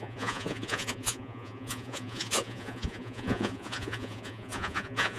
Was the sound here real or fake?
fake